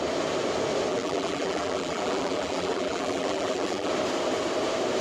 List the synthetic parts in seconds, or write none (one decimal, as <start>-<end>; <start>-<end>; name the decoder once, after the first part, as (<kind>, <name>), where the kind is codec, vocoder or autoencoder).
0.9-3.9 (vocoder, BigVGAN v2)